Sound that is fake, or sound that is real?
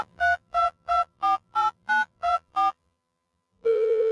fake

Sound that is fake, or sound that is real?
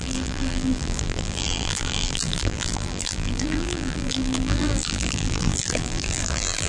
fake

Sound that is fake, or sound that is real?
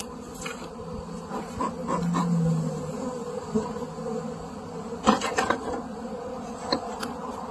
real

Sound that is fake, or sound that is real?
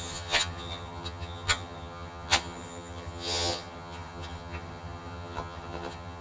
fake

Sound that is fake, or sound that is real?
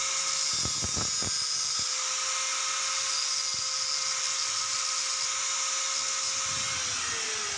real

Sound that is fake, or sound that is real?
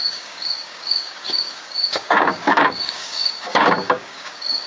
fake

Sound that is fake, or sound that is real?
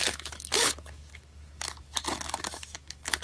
fake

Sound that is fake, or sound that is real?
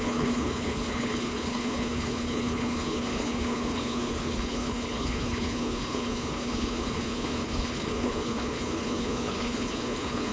fake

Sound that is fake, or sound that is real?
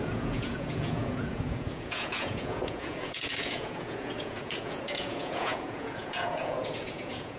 fake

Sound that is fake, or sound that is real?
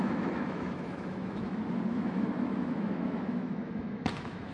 fake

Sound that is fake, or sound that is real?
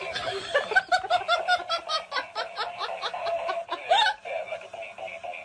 real